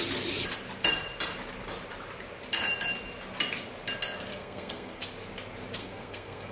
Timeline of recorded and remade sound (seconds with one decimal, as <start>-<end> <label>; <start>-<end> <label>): 0.0-4.3 recorded; 4.3-5.0 remade; 5.0-5.8 recorded; 5.8-6.5 remade